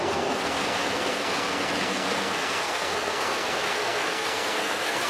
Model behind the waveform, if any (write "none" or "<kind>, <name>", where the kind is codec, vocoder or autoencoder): codec, SNAC